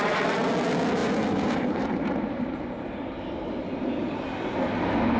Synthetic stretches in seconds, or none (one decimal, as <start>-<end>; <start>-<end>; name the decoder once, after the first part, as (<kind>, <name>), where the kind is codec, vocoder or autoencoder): 1.0-4.1 (vocoder, BigVGAN v2)